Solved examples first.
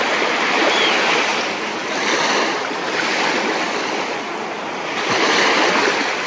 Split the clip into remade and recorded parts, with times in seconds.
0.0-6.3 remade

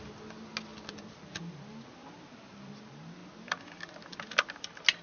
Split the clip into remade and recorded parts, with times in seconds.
0.0-2.0 recorded; 2.0-2.7 remade; 2.7-5.0 recorded

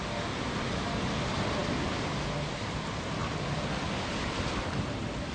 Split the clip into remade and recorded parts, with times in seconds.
0.0-1.6 recorded; 1.6-2.8 remade; 2.8-3.2 recorded; 3.2-4.8 remade; 4.8-5.3 recorded